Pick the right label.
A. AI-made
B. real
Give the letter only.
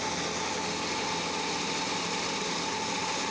B